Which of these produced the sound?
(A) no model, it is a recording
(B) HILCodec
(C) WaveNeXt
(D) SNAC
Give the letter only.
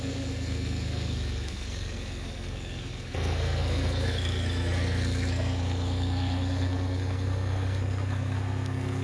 D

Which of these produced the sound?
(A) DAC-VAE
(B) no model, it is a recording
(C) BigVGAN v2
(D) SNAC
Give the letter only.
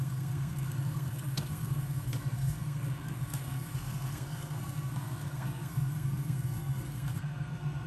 D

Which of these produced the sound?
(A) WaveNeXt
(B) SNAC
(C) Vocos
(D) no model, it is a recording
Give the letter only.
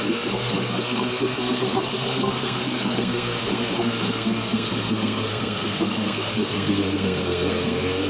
B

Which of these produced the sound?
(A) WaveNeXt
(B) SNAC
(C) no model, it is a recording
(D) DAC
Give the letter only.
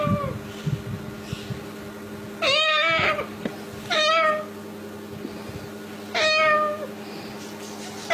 C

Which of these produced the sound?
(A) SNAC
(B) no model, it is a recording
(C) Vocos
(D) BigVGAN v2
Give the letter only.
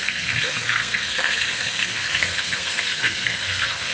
A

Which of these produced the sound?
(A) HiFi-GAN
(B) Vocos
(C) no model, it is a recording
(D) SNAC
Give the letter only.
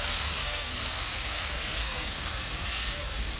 D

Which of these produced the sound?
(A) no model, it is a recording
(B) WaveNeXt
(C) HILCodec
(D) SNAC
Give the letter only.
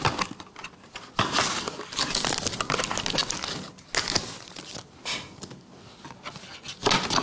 A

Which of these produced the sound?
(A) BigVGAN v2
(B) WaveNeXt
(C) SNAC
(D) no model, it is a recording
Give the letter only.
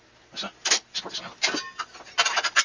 D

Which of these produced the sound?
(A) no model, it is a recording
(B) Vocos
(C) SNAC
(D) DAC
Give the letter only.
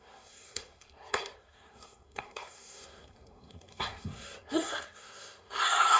C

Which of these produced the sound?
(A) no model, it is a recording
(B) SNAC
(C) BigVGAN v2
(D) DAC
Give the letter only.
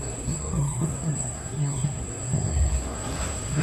B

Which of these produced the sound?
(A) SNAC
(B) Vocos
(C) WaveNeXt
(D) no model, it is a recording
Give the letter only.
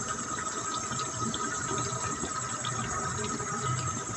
D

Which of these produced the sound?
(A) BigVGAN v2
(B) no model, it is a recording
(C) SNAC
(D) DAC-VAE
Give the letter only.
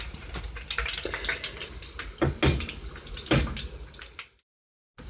B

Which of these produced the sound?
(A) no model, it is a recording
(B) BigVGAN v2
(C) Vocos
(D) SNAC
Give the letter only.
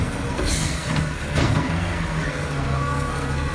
D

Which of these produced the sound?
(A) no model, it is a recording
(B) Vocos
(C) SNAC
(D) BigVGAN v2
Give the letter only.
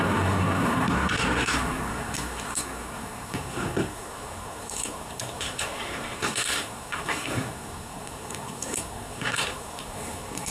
C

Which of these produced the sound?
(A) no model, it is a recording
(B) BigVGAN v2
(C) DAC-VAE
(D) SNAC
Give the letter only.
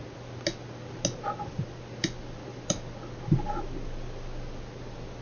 A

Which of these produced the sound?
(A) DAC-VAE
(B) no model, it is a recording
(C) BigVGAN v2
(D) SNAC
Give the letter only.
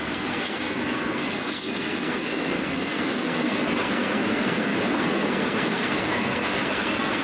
D